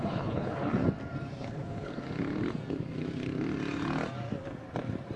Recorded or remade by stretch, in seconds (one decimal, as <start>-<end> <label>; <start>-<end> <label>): 0.0-0.8 remade; 0.8-1.4 recorded; 1.4-1.9 remade; 1.9-5.2 recorded

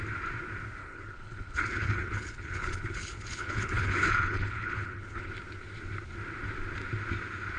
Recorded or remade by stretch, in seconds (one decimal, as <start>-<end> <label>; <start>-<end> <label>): 0.0-0.8 recorded; 0.8-5.3 remade; 5.3-7.6 recorded

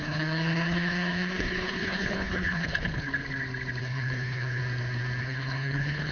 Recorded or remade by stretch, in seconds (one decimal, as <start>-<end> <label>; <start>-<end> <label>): 0.0-3.1 remade; 3.1-3.8 recorded; 3.8-4.6 remade; 4.6-5.2 recorded; 5.2-6.1 remade

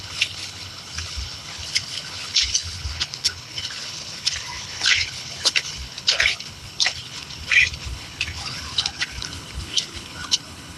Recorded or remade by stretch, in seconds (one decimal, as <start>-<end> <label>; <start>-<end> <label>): 0.0-10.8 remade

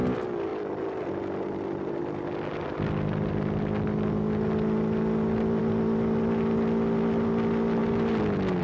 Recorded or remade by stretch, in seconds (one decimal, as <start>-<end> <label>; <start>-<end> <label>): 0.0-8.6 recorded

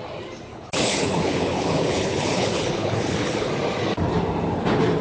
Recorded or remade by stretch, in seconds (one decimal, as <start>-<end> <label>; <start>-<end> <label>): 0.0-0.5 recorded; 0.5-3.5 remade; 3.5-5.0 recorded